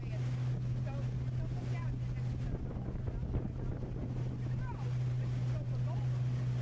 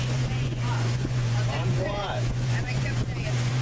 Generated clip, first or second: second